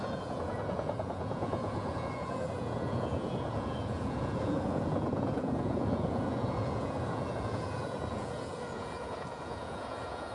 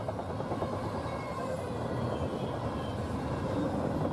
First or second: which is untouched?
second